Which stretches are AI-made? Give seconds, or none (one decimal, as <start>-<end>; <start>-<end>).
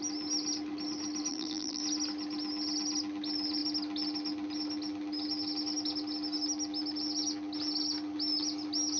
1.3-1.8